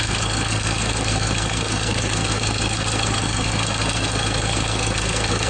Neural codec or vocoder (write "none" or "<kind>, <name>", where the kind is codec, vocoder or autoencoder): codec, SNAC